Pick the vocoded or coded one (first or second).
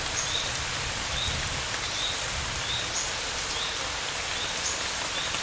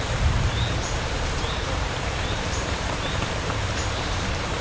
second